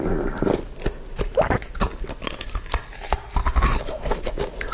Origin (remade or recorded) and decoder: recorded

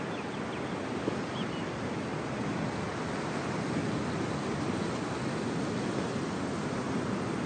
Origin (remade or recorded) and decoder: recorded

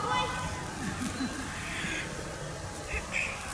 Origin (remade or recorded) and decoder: recorded